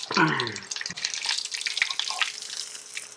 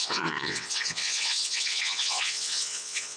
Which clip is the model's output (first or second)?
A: second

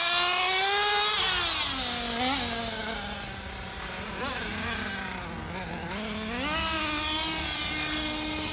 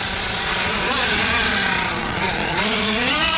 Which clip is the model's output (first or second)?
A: second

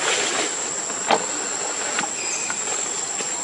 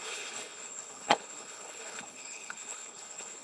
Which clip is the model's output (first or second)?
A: second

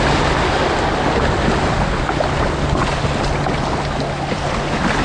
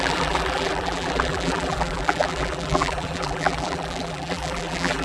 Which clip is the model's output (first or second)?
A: second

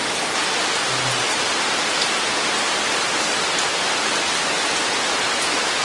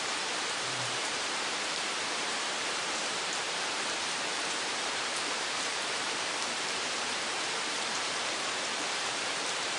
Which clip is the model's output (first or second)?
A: second